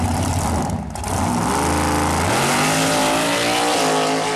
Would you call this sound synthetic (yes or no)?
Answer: no